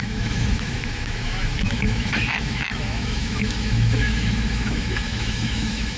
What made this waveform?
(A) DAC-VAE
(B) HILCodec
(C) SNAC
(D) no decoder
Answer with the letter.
A